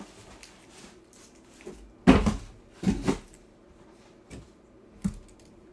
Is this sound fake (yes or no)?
no